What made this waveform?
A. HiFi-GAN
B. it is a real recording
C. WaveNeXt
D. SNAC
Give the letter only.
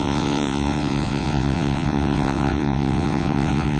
C